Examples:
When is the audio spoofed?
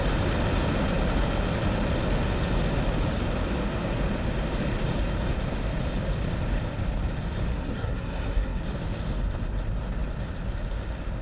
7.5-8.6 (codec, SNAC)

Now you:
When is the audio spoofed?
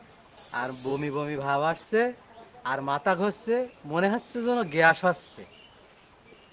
none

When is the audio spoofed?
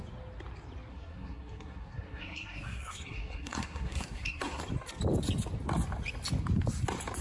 0.9-4.6 (codec, SNAC)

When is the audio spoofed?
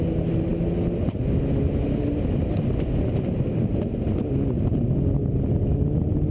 none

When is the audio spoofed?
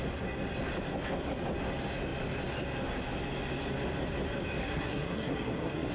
4.6-5.9 (codec, SNAC)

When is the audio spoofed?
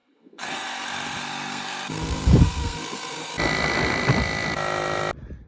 0.0-3.3 (codec, SNAC)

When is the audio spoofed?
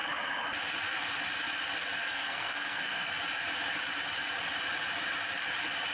2.1-3.1 (codec, SNAC)